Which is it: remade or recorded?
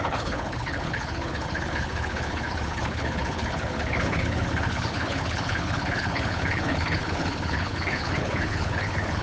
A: remade